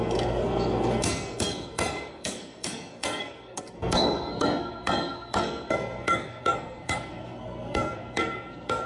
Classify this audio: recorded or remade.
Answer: remade